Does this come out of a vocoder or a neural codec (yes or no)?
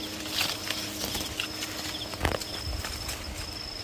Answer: no